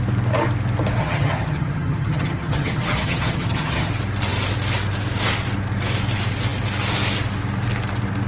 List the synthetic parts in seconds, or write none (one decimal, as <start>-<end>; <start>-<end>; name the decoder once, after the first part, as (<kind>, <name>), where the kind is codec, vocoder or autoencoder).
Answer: 1.0-3.9 (vocoder, HiFi-GAN)